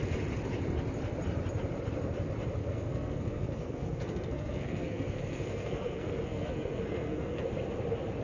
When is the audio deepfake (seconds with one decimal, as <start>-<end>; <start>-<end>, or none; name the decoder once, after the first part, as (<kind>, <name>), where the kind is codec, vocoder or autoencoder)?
2.6-7.5 (codec, SNAC)